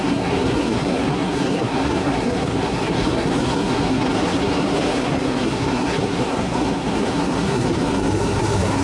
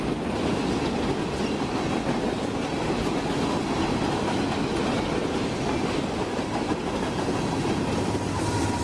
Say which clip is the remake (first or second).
first